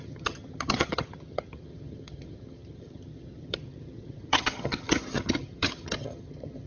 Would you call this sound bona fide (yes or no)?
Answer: no